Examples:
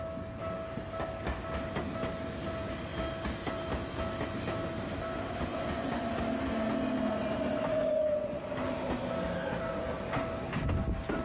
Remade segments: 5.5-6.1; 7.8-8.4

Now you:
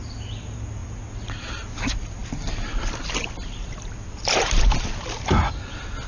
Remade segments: none

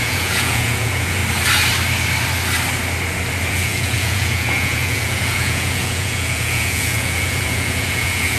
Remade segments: 0.0-1.2; 3.5-8.4

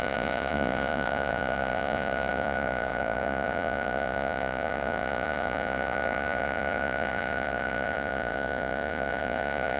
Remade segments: 0.0-9.8